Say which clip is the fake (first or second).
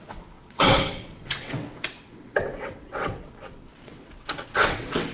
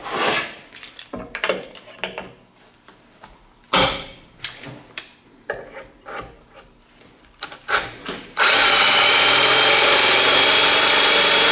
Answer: first